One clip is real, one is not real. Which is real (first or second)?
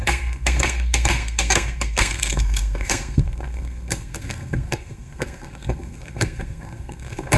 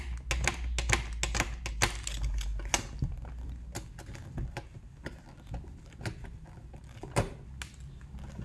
second